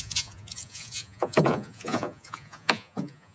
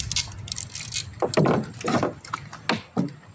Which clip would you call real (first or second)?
second